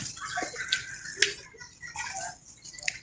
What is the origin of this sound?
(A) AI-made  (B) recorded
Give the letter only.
B